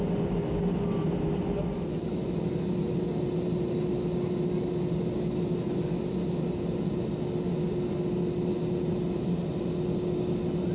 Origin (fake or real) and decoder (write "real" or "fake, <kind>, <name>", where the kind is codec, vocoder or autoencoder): real